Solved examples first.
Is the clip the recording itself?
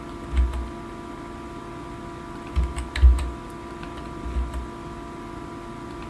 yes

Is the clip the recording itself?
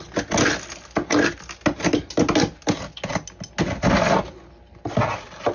yes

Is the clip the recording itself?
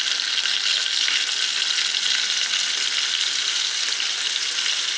yes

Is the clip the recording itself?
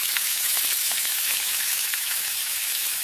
no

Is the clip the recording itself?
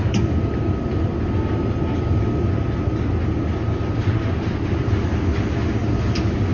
yes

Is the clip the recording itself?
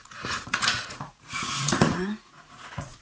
no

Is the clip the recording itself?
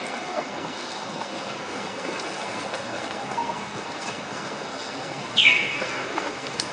no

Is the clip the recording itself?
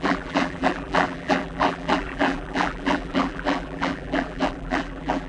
no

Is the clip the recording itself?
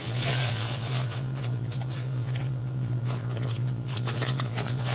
no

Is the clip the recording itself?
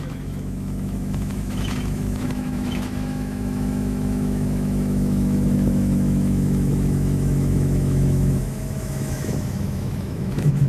no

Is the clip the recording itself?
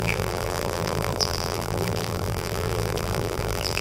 no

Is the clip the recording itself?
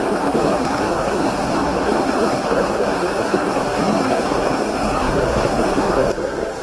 no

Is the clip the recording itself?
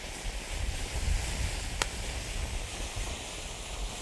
yes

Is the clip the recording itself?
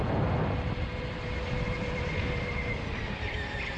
yes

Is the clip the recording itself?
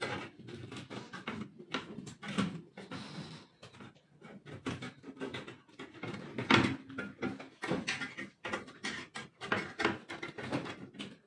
yes